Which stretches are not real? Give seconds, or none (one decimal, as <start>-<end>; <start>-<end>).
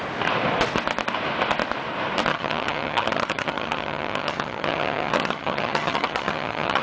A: 2.3-6.8